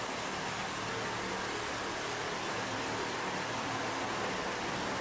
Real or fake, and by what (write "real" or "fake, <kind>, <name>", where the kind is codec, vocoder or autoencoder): real